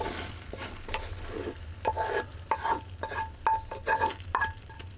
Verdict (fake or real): real